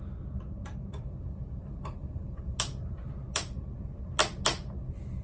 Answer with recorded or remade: recorded